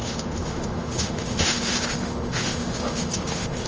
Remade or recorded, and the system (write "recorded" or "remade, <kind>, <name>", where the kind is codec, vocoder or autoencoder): remade, autoencoder, DAC-VAE